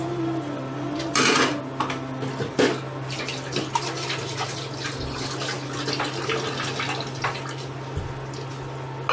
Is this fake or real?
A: real